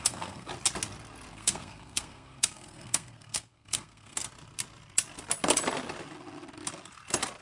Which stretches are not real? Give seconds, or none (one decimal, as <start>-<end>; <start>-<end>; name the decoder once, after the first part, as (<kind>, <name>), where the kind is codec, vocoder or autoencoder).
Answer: 0.0-0.5 (codec, SNAC); 1.3-4.2